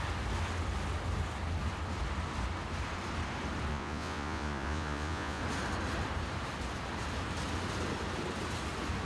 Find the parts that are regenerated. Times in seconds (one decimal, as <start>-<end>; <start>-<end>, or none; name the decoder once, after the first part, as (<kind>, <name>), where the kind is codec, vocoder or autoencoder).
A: 3.7-5.4 (vocoder, Vocos)